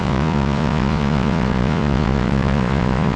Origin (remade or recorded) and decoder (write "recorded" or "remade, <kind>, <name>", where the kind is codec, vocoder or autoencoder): remade, vocoder, Vocos